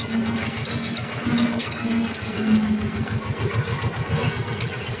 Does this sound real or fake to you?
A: fake